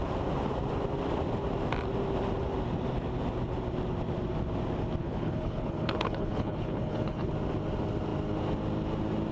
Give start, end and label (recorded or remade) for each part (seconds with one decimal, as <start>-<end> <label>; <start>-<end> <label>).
0.0-5.0 recorded; 5.0-7.3 remade; 7.3-9.3 recorded